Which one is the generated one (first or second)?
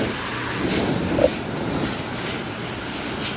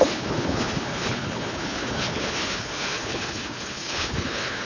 second